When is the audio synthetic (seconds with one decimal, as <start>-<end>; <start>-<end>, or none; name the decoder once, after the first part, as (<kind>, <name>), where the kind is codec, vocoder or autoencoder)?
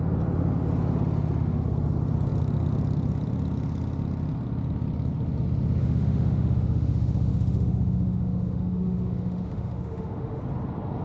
5.8-10.4 (autoencoder, DAC-VAE)